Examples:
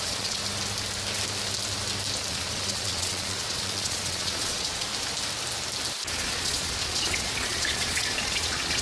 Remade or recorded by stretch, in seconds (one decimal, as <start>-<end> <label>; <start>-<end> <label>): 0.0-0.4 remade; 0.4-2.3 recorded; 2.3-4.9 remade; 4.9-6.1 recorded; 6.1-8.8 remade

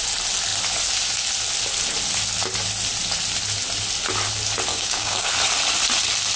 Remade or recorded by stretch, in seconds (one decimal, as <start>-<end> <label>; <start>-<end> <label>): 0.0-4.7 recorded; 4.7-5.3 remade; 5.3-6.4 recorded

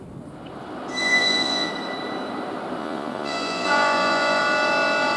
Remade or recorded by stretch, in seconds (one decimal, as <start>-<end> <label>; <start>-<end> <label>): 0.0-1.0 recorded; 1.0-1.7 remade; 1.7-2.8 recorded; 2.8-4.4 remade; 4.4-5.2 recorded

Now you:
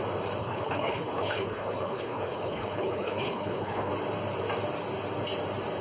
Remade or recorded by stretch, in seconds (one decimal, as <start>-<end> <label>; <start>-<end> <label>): 0.0-0.4 recorded; 0.4-3.9 remade; 3.9-5.8 recorded